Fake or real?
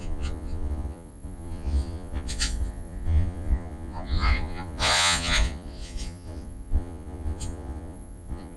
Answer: fake